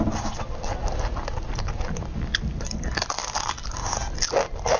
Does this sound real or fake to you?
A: real